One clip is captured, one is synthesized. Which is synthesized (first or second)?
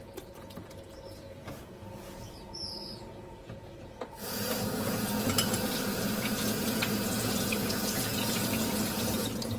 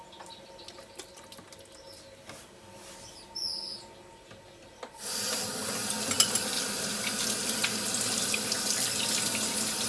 first